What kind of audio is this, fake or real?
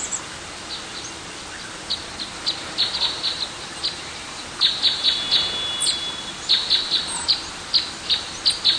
real